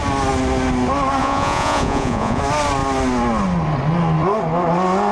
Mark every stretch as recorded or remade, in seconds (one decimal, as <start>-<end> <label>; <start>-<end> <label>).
0.0-1.2 recorded; 1.2-2.4 remade; 2.4-5.1 recorded